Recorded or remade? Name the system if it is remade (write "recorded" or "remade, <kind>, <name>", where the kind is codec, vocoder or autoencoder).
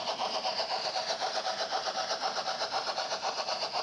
remade, vocoder, BigVGAN v2